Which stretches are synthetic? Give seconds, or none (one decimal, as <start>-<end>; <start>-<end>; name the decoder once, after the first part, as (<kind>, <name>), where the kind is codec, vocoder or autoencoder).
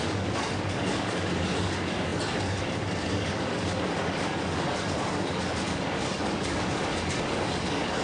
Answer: 0.0-8.0 (codec, DAC)